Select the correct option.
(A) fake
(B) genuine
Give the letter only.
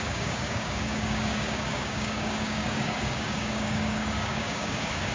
A